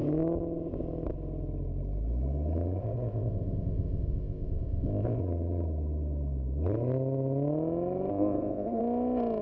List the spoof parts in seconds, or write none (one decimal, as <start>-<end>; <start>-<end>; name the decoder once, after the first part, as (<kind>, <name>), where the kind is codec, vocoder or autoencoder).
2.8-5.2 (codec, ZipCodec); 8.1-8.8